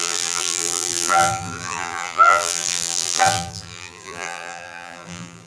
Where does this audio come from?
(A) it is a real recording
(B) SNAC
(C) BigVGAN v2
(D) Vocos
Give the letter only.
C